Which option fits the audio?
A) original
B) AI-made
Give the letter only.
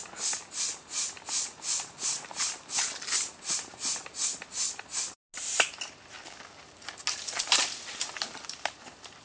A